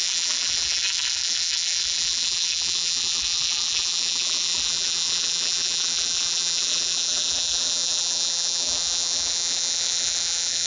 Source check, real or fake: fake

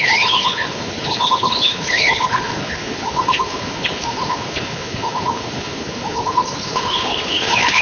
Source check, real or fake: fake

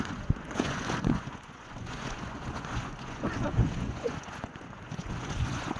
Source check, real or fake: fake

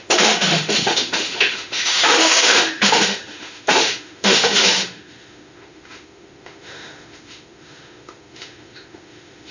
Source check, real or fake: fake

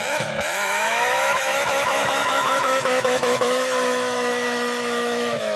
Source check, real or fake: fake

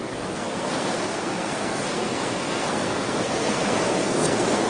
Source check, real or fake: fake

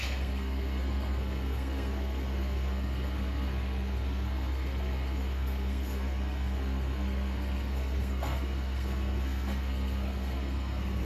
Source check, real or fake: fake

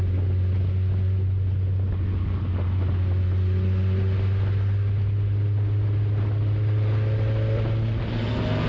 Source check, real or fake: real